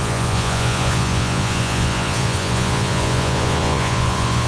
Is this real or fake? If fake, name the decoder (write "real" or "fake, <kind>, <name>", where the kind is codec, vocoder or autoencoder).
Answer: fake, vocoder, Vocos